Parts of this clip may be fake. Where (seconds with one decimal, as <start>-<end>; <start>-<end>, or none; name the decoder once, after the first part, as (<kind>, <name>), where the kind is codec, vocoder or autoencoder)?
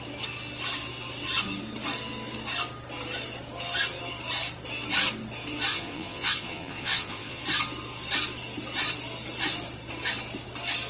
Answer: 5.7-7.4 (vocoder, Vocos)